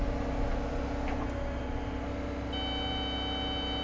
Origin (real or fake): real